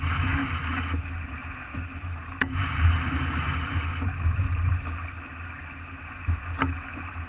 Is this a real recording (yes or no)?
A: yes